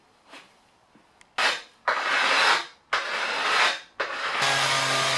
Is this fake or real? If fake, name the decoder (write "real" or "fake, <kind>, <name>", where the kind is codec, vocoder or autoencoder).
real